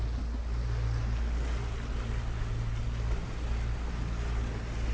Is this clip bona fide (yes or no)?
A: yes